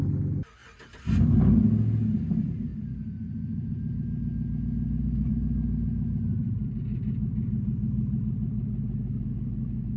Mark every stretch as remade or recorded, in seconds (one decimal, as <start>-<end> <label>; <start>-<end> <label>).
0.0-6.4 recorded; 6.4-8.2 remade; 8.2-10.0 recorded